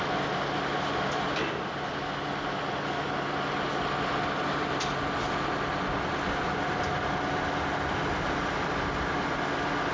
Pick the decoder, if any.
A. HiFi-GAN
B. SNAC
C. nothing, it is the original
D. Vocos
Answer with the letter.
C